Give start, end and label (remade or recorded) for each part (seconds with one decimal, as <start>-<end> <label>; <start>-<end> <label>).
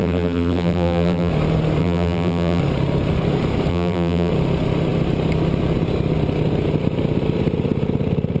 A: 0.0-1.3 remade; 1.3-1.8 recorded; 1.8-2.6 remade; 2.6-3.7 recorded; 3.7-4.3 remade; 4.3-8.4 recorded